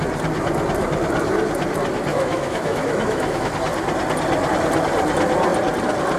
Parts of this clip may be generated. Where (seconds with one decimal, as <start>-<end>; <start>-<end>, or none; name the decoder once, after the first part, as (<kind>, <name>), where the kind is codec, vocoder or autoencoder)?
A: 2.1-3.5 (autoencoder, DAC-VAE)